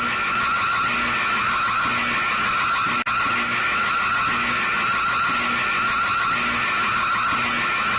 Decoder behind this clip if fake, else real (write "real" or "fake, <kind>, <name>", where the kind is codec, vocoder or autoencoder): real